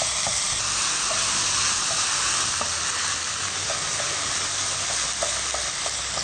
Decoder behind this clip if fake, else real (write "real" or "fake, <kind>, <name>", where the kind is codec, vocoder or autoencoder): real